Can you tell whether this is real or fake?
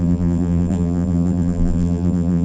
fake